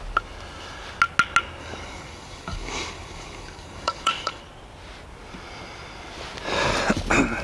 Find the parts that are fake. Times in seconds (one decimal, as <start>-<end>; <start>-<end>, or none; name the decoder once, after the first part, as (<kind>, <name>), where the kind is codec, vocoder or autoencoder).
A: 1.6-4.4 (codec, DAC)

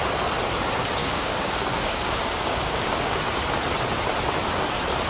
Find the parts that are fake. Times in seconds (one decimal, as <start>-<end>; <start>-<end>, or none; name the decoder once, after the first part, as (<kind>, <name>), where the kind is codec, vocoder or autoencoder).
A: 1.0-3.2 (codec, DAC)

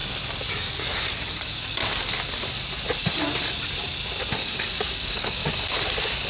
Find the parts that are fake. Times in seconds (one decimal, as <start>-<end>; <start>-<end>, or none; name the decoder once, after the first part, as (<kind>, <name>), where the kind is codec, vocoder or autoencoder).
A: 0.5-1.8 (codec, DAC); 4.3-5.4